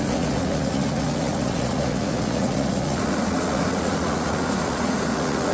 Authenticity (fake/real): fake